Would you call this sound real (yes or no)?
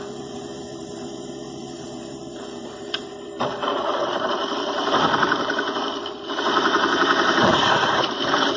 no